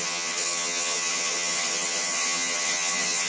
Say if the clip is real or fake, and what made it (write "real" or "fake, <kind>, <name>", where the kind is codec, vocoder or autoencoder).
fake, vocoder, HiFi-GAN